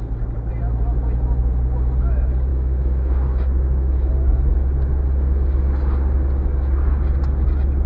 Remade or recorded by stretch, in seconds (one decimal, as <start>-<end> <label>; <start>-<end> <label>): 0.0-2.5 recorded; 2.5-4.1 remade; 4.1-7.9 recorded